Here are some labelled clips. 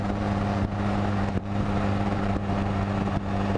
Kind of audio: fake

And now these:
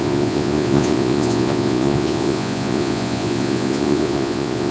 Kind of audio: fake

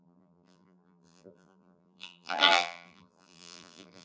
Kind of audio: fake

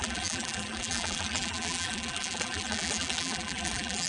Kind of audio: fake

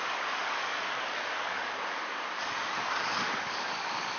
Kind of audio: fake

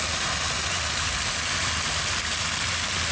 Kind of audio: real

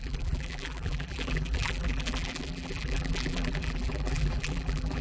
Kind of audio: fake